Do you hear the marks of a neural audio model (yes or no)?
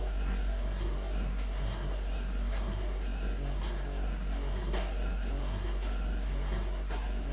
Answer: yes